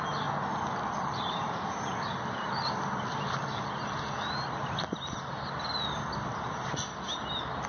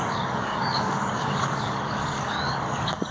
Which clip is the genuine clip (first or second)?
first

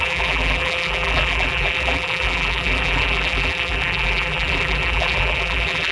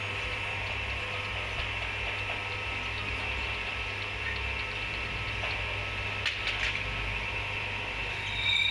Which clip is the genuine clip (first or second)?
second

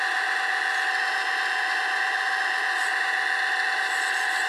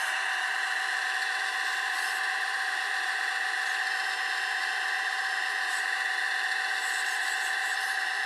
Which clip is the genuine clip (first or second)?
first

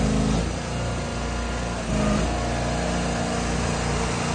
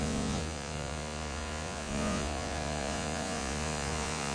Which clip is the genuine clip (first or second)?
first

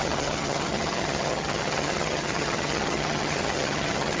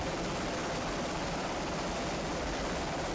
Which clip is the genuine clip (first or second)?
second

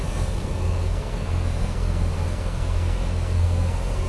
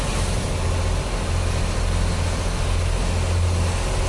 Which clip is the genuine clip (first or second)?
second